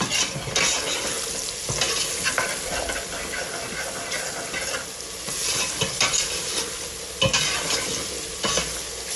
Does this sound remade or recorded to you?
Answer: recorded